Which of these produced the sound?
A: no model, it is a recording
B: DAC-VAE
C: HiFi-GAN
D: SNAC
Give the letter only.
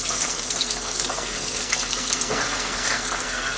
D